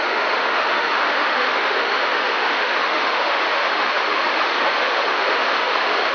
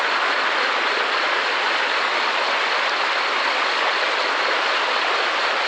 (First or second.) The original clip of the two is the second